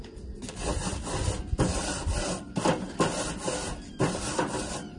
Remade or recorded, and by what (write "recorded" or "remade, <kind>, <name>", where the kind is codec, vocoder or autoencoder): recorded